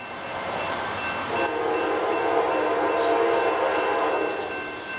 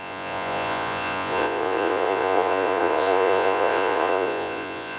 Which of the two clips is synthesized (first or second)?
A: second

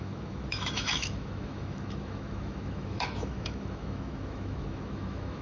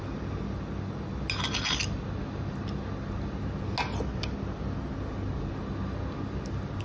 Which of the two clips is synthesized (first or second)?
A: first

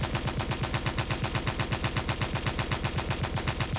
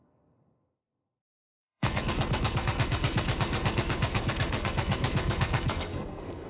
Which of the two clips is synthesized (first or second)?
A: second